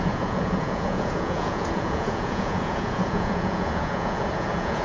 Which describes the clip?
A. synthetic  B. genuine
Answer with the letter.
A